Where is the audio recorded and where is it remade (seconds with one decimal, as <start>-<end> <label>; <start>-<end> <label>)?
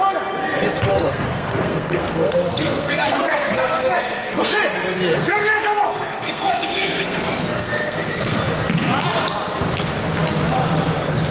0.0-0.9 recorded; 0.9-4.6 remade; 4.6-5.1 recorded; 5.1-8.4 remade; 8.4-11.3 recorded